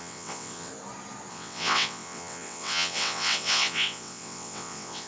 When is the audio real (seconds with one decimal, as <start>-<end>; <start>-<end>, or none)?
0.7-1.3